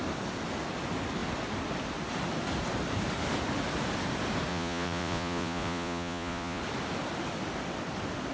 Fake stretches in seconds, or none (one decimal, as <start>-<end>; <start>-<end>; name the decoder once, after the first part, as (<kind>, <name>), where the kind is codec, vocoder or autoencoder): 4.5-6.6 (vocoder, Vocos)